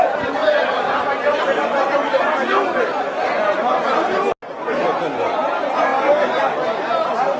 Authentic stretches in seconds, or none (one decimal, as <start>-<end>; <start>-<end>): 0.0-7.4